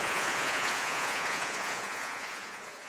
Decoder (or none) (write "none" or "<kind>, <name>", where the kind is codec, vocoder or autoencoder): vocoder, Vocos